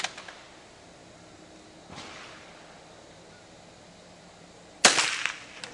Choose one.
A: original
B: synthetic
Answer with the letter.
A